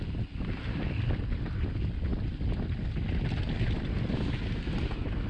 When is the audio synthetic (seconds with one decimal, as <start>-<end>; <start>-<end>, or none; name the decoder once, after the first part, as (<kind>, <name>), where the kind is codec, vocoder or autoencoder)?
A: none